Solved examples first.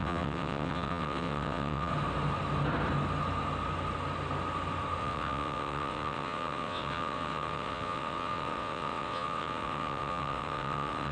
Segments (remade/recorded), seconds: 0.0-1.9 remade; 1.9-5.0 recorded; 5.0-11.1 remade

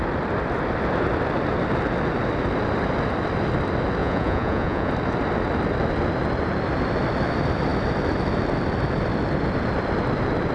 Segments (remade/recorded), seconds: 0.0-4.0 recorded; 4.0-4.9 remade; 4.9-10.5 recorded

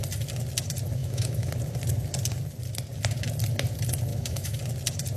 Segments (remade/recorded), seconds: 0.0-1.0 recorded; 1.0-1.5 remade; 1.5-4.1 recorded; 4.1-4.6 remade; 4.6-5.2 recorded